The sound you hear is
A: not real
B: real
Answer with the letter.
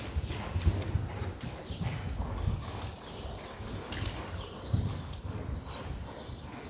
B